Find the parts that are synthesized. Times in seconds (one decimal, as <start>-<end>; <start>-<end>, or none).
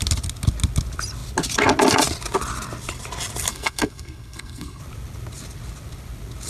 3.5-4.8